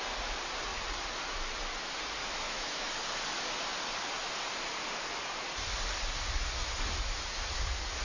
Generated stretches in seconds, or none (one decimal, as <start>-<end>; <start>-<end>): 2.2-3.0